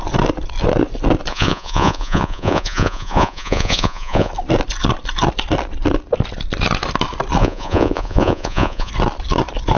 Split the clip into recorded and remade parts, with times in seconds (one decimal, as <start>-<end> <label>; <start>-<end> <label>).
0.0-1.3 recorded; 1.3-4.3 remade; 4.3-7.4 recorded; 7.4-8.9 remade; 8.9-9.8 recorded

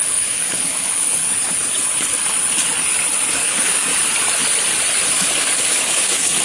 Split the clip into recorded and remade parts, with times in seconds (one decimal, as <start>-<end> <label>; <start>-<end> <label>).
0.0-1.2 remade; 1.2-3.3 recorded; 3.3-3.9 remade; 3.9-5.4 recorded; 5.4-6.4 remade

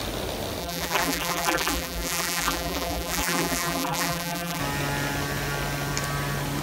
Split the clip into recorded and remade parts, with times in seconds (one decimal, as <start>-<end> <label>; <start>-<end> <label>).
0.0-0.6 recorded; 0.6-4.6 remade; 4.6-6.6 recorded

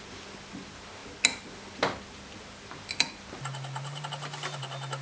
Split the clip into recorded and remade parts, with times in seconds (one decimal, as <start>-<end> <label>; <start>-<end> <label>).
0.0-5.0 recorded